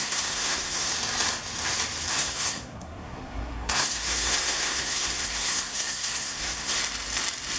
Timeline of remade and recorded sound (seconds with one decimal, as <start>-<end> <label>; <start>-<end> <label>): 0.0-0.9 remade; 0.9-2.1 recorded; 2.1-6.8 remade; 6.8-7.6 recorded